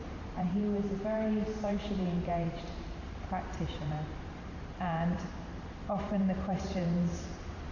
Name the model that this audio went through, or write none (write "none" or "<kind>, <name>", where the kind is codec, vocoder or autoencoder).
vocoder, BigVGAN v2